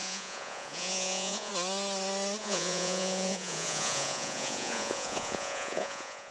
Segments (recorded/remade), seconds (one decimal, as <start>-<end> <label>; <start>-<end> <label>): 0.0-1.5 remade; 1.5-2.4 recorded; 2.4-6.3 remade